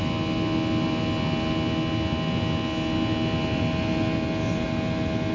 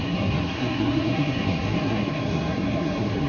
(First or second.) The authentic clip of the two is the first